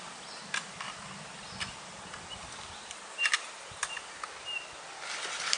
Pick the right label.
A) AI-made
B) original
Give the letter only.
B